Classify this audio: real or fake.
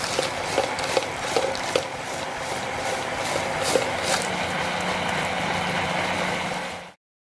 real